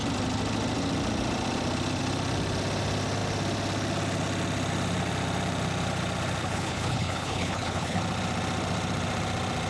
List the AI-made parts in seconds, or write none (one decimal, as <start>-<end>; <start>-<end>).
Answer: 6.4-8.0

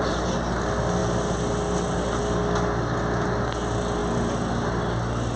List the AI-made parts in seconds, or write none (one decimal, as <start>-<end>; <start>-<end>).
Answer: none

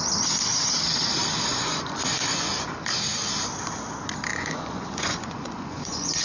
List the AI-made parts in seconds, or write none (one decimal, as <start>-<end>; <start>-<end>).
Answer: 1.5-2.7; 4.3-6.2

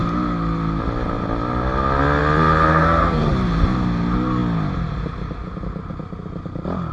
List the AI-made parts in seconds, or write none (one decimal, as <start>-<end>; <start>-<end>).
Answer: 2.7-3.3

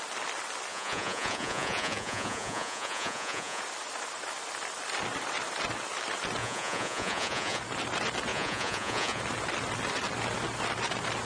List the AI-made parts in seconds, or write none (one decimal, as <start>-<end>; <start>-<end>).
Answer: 0.7-3.6; 6.4-7.6; 8.3-9.2

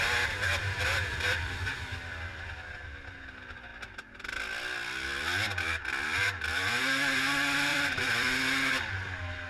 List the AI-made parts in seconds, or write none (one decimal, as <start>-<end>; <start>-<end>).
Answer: 7.7-8.9